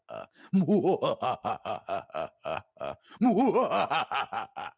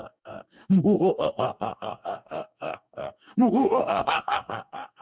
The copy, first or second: second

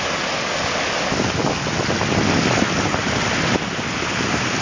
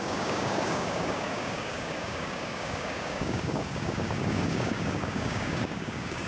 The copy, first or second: second